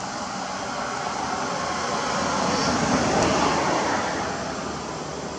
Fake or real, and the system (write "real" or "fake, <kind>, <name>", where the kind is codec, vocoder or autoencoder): real